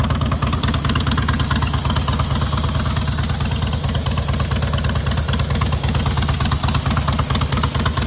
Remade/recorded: recorded